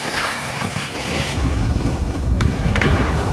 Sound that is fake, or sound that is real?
fake